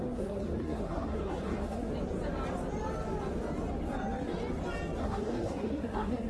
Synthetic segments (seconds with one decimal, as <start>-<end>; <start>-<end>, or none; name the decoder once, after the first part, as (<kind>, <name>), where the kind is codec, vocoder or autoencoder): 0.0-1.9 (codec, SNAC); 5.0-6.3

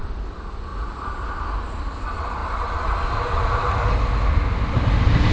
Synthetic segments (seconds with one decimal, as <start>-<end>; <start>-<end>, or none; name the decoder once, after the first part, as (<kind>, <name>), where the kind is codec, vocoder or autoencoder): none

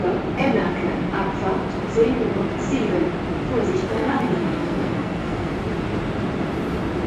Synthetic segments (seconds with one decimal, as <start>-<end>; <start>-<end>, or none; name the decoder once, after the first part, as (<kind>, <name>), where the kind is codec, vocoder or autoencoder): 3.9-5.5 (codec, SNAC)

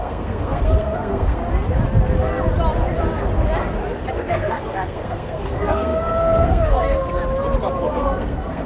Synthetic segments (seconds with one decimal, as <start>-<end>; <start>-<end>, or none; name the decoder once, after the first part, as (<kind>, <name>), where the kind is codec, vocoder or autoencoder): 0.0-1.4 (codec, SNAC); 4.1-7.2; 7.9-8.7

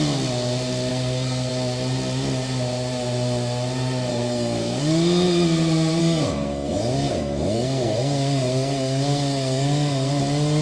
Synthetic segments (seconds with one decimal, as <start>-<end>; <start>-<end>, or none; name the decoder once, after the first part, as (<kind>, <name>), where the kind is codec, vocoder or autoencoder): 0.9-1.5 (codec, SNAC); 4.1-4.8; 6.0-10.2

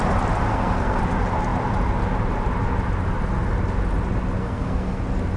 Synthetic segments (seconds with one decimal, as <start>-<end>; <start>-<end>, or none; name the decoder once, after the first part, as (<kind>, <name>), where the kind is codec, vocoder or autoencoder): 0.5-1.0 (codec, SNAC); 4.4-5.0